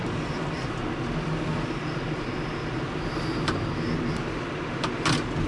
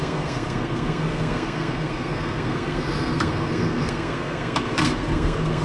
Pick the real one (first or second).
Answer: first